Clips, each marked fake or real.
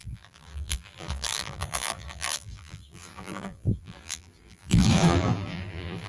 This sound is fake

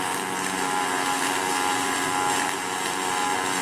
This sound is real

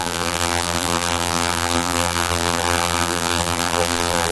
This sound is fake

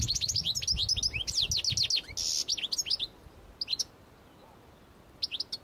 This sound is real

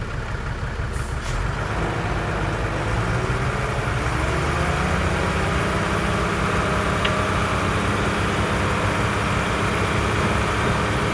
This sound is real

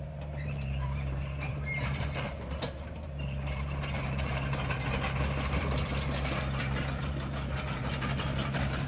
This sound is fake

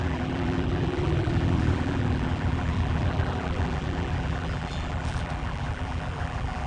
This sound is fake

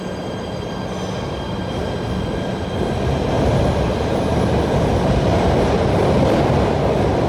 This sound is real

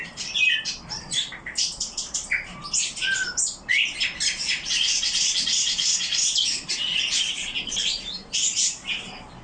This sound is real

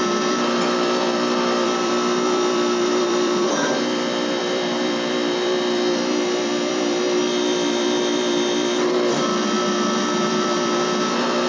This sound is fake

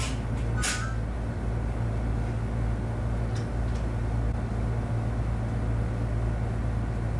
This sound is real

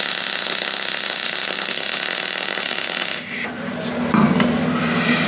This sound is real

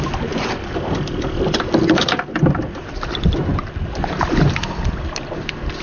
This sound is real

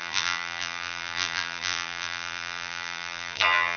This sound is fake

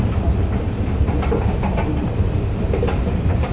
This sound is fake